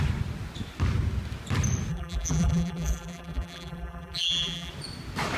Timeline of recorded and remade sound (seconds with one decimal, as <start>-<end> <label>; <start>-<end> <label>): 0.0-1.9 recorded; 1.9-4.7 remade; 4.7-5.4 recorded